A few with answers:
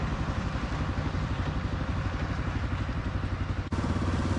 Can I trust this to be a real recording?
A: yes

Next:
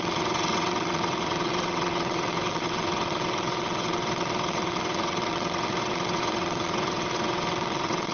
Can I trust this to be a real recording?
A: no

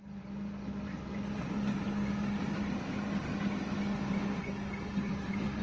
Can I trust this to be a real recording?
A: yes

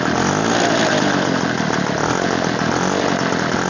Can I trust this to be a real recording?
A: yes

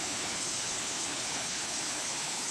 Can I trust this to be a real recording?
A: no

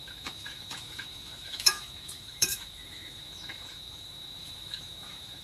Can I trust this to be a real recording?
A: no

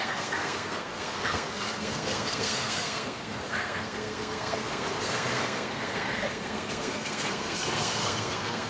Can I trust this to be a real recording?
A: no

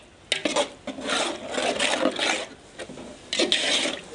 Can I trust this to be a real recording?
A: yes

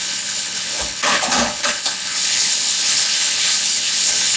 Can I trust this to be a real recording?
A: no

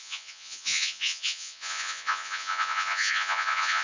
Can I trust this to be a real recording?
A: no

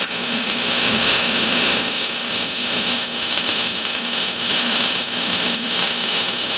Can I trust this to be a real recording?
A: no